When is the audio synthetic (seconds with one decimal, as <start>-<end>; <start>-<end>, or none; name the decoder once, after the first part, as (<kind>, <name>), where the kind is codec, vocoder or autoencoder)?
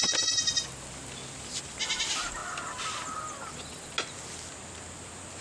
none